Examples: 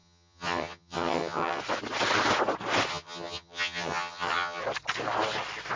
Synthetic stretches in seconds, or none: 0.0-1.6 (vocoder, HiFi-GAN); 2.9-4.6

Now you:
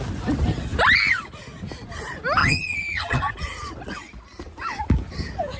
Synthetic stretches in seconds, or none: 2.4-3.3 (vocoder, HiFi-GAN)

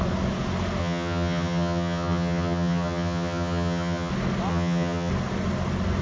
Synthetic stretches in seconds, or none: 0.8-4.1 (vocoder, HiFi-GAN); 4.5-5.1